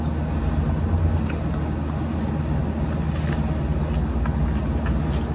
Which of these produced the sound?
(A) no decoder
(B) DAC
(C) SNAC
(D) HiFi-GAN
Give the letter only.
A